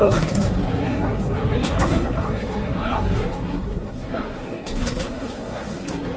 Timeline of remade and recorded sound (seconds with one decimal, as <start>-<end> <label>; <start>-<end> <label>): 0.0-6.2 remade